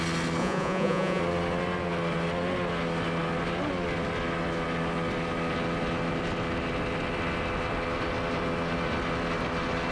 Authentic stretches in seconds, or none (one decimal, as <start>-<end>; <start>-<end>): 0.0-0.4; 1.2-9.9